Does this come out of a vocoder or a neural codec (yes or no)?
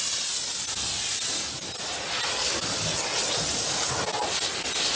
no